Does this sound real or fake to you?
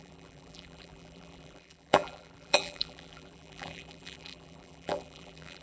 fake